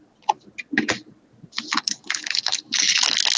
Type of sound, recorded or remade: recorded